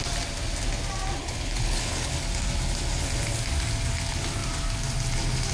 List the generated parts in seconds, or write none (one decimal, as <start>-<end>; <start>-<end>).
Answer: 1.2-2.1